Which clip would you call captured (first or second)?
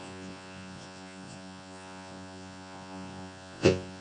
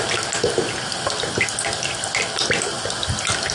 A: second